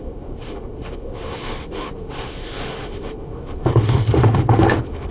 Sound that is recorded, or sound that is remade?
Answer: remade